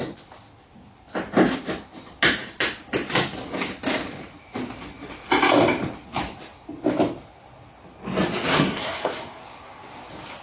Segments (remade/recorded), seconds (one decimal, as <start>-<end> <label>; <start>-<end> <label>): 0.0-8.5 recorded; 8.5-9.4 remade; 9.4-10.4 recorded